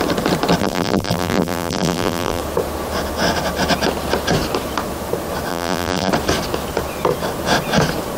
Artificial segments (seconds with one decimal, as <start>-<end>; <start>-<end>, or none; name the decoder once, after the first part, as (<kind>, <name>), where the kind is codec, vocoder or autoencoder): 0.6-2.4 (vocoder, BigVGAN v2); 5.5-6.1